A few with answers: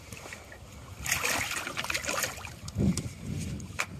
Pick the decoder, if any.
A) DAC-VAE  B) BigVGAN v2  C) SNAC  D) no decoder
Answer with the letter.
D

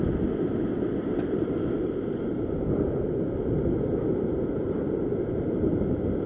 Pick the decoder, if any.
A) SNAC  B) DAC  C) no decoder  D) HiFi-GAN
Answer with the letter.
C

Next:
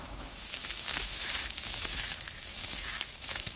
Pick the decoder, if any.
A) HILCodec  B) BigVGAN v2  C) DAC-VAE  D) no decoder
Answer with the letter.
C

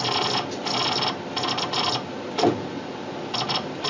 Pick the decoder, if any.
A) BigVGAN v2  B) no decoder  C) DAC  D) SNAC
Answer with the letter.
B